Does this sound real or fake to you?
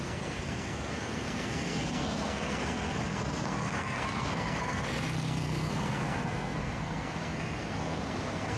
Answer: fake